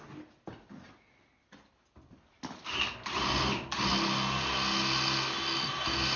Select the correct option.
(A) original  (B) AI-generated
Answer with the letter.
A